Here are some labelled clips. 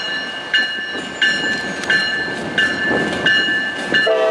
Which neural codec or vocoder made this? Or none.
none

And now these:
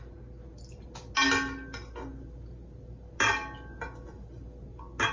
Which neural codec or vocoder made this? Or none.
none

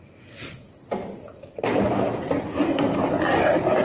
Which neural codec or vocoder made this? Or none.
none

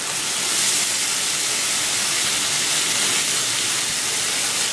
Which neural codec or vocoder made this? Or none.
none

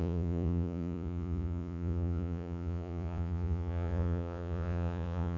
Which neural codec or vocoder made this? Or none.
vocoder, Vocos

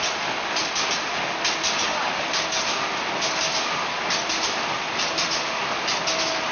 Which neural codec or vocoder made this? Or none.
none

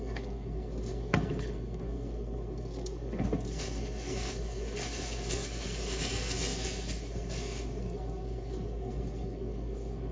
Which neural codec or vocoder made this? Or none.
codec, SNAC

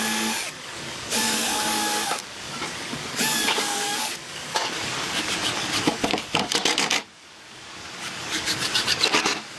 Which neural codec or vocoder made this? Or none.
codec, DAC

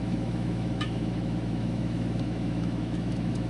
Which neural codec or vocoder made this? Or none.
autoencoder, DAC-VAE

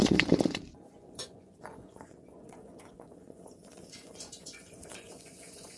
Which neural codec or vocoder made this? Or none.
vocoder, Vocos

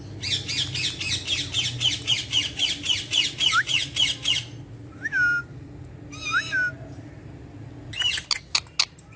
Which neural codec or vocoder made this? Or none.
none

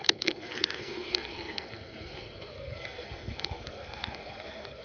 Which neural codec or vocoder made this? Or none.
codec, SNAC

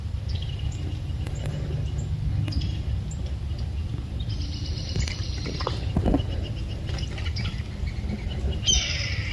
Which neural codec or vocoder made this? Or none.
none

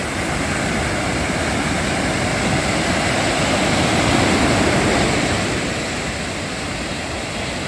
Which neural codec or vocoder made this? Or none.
none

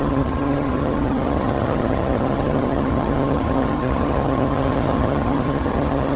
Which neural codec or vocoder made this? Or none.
vocoder, HiFi-GAN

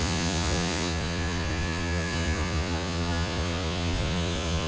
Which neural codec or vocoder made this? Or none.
vocoder, Vocos